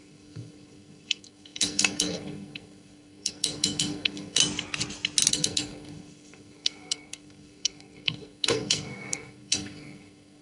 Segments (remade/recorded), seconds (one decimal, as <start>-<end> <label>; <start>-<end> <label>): 0.0-4.4 remade; 4.4-5.3 recorded; 5.3-10.4 remade